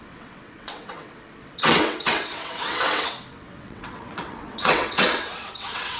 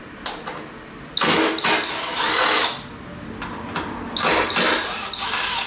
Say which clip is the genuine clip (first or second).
second